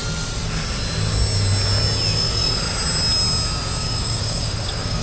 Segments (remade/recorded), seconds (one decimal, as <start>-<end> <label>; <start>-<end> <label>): 0.0-3.8 recorded; 3.8-5.0 remade